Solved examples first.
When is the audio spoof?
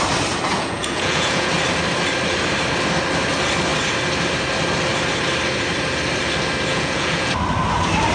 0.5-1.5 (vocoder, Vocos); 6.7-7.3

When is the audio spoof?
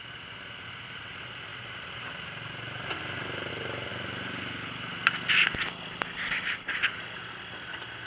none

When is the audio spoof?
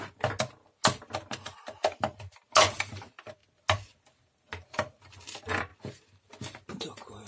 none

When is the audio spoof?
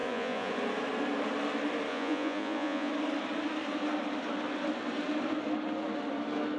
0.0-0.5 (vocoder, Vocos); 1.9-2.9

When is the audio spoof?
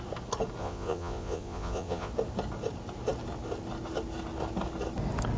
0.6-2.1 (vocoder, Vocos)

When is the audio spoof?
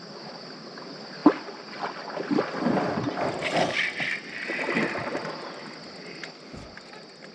none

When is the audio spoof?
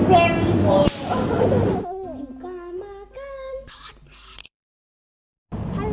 none